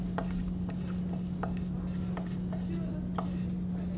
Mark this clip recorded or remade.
recorded